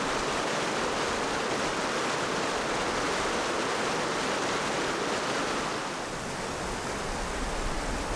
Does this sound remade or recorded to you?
recorded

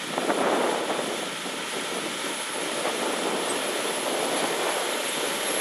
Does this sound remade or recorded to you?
recorded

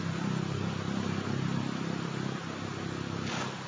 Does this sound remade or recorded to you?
recorded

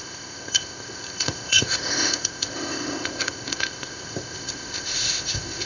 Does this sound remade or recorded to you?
remade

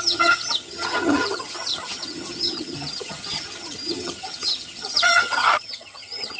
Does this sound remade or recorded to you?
remade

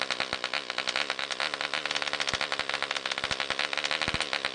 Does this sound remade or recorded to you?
recorded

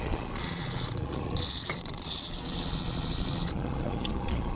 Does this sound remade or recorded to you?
remade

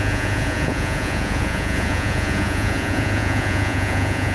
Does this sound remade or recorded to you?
remade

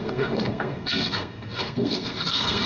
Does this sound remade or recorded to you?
remade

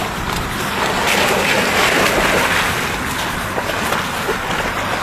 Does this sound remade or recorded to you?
recorded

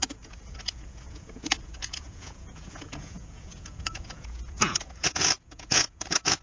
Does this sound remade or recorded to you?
remade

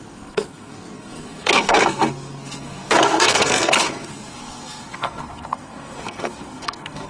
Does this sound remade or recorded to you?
remade